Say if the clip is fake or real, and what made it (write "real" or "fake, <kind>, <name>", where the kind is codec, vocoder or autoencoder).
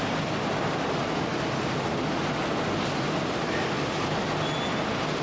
real